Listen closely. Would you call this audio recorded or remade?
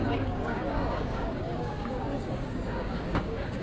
remade